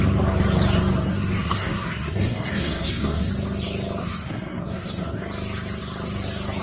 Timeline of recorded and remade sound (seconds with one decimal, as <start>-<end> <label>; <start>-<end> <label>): 0.0-1.1 recorded; 1.1-3.3 remade; 3.3-4.0 recorded; 4.0-5.2 remade; 5.2-6.6 recorded